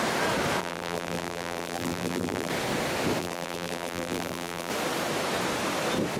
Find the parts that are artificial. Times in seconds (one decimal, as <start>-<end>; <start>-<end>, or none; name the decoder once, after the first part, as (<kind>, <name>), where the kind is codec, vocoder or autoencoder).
0.6-2.5 (vocoder, BigVGAN v2); 3.2-4.7